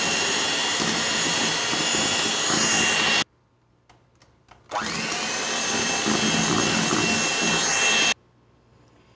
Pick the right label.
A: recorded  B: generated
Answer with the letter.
A